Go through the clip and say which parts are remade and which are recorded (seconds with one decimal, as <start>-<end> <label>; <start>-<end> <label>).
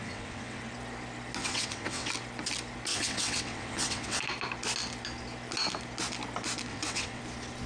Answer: 0.0-0.6 remade; 0.6-1.4 recorded; 1.4-2.1 remade; 2.1-2.9 recorded; 2.9-4.2 remade; 4.2-6.7 recorded; 6.7-7.2 remade; 7.2-7.7 recorded